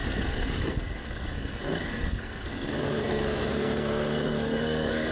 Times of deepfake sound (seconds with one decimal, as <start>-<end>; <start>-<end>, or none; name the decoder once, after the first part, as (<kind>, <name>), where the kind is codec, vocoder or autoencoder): 0.0-5.1 (codec, SNAC)